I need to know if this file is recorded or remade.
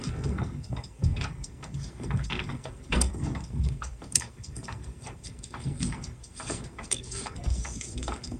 remade